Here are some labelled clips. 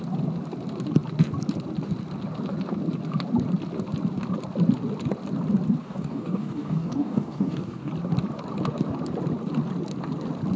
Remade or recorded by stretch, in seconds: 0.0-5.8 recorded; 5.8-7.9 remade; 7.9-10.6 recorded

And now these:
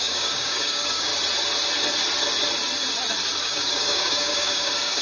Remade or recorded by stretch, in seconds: 0.0-1.1 remade; 1.1-3.4 recorded; 3.4-5.0 remade

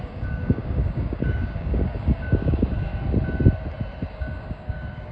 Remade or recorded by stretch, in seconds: 0.0-2.9 remade; 2.9-4.1 recorded; 4.1-5.1 remade

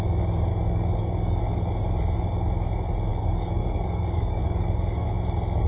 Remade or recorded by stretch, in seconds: 0.0-0.5 recorded; 0.5-1.4 remade; 1.4-3.1 recorded; 3.1-5.1 remade; 5.1-5.7 recorded

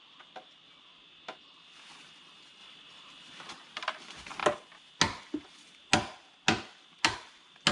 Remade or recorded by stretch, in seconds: 0.0-7.7 recorded

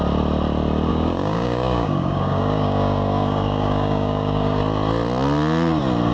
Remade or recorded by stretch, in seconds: 0.0-0.9 recorded; 0.9-4.6 remade; 4.6-6.1 recorded

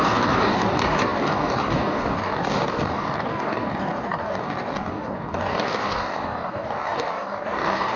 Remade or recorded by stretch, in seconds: 0.0-8.0 remade